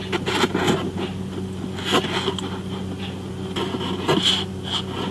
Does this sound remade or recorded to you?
recorded